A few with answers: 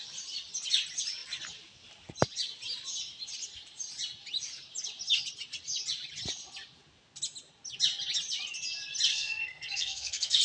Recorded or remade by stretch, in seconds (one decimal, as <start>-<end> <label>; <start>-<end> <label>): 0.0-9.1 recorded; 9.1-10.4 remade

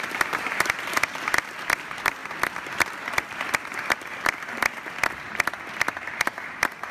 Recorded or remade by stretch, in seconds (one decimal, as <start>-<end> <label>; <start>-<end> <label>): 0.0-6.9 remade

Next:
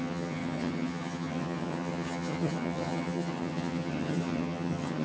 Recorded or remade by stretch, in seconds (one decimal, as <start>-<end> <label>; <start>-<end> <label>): 0.0-5.0 remade